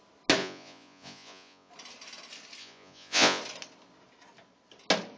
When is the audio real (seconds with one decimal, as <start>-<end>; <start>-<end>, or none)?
0.0-0.4; 1.7-2.6; 3.4-5.2